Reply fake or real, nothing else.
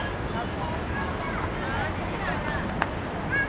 real